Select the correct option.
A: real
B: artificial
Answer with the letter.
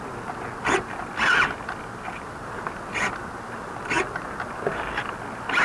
A